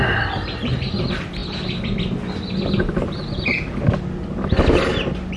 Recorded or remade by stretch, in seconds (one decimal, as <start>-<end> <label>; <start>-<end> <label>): 0.0-5.4 recorded